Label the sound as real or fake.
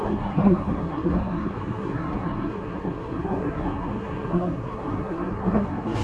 fake